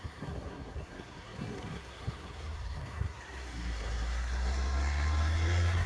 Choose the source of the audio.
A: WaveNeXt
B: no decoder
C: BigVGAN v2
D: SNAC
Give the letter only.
D